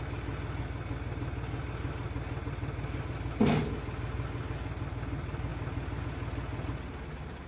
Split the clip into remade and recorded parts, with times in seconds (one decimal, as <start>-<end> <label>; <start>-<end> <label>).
0.0-7.5 recorded